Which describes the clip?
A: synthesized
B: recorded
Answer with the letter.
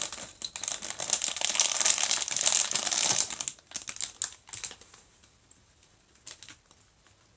B